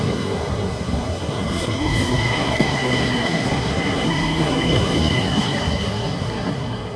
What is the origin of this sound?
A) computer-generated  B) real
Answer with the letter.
A